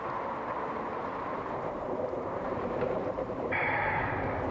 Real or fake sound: fake